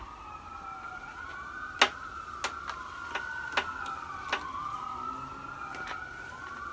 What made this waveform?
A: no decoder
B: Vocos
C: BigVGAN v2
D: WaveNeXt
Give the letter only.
A